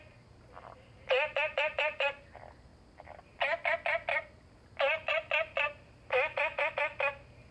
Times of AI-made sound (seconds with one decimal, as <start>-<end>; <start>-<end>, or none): none